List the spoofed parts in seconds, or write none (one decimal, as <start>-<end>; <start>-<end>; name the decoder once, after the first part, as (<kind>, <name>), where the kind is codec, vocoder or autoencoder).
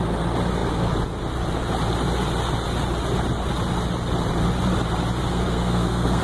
5.3-6.2 (codec, SNAC)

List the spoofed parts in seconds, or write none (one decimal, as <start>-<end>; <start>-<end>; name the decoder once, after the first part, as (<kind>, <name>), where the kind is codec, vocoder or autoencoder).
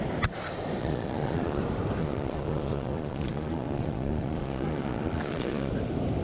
0.8-1.6 (vocoder, Vocos); 2.0-5.7